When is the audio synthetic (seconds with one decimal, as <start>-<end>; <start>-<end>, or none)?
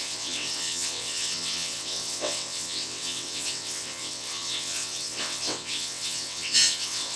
0.0-7.2